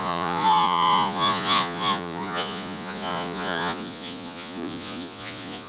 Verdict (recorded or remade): remade